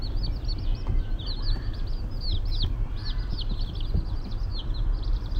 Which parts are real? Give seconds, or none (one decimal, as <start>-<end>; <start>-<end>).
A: 0.0-0.7; 3.3-4.5